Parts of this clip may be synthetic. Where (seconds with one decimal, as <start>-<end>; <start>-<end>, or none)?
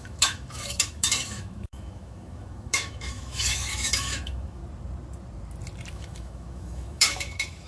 0.0-4.6; 5.9-7.7